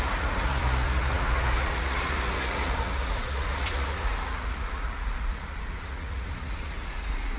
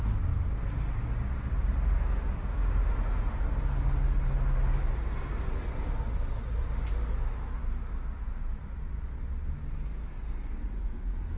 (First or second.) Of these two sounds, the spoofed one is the first